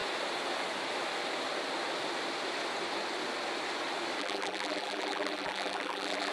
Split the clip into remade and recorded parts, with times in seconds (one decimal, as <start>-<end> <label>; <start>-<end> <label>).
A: 0.0-4.2 recorded; 4.2-6.3 remade